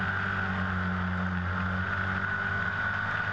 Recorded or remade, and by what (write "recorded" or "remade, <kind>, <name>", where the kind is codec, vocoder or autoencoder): recorded